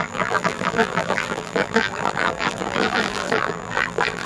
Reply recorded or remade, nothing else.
remade